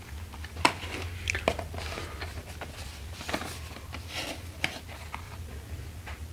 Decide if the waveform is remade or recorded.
recorded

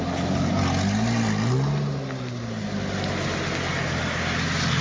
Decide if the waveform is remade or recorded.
recorded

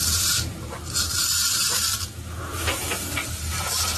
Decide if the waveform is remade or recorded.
recorded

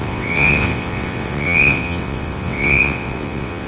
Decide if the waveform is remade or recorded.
remade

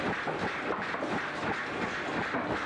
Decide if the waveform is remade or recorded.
recorded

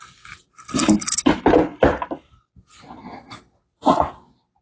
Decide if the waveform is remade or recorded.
recorded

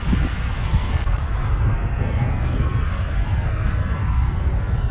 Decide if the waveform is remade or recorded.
remade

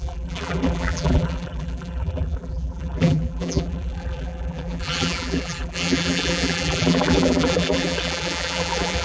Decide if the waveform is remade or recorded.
remade